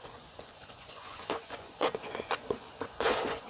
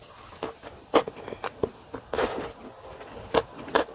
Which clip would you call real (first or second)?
second